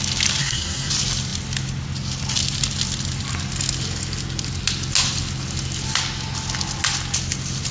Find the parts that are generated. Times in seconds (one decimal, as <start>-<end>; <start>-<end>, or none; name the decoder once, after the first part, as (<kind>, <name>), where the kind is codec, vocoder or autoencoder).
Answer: 0.4-0.9 (codec, SNAC)